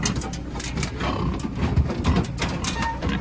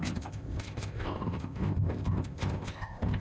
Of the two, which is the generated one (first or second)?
second